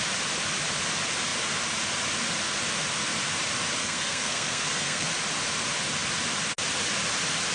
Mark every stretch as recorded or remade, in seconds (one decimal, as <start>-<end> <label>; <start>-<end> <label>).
0.0-3.8 recorded; 3.8-5.1 remade; 5.1-7.5 recorded